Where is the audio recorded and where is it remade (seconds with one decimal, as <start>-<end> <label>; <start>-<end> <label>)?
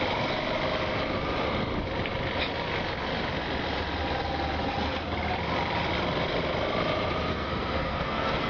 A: 0.0-7.3 recorded; 7.3-8.5 remade